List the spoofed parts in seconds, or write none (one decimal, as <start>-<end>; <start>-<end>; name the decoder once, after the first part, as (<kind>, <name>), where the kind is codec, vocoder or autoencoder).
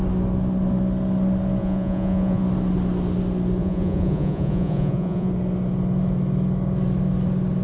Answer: 1.6-2.4 (vocoder, Vocos); 3.6-5.3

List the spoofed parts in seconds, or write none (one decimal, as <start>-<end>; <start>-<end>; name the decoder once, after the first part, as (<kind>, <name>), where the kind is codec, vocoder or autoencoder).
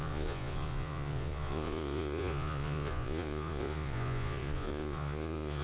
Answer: 0.0-5.6 (vocoder, Vocos)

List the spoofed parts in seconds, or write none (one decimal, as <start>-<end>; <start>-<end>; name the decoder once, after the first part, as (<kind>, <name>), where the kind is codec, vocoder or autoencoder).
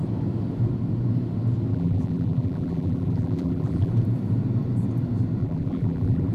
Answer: 1.7-3.9 (vocoder, BigVGAN v2); 5.4-6.3